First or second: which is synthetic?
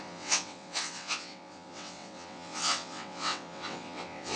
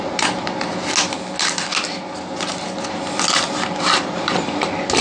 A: first